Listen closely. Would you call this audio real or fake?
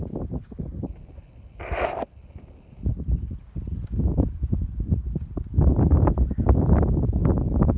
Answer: real